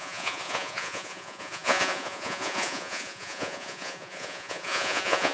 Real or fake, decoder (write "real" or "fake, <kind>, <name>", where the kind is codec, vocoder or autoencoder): fake, vocoder, Vocos